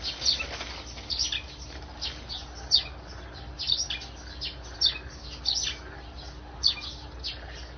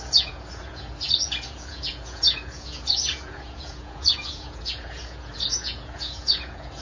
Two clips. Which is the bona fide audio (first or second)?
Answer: first